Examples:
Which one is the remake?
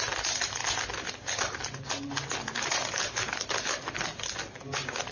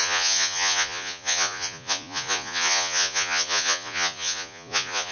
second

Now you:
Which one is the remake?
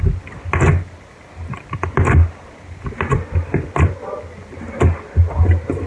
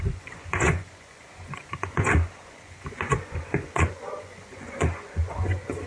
second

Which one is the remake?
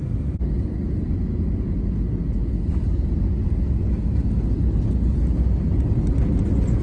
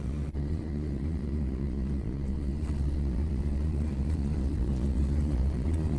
second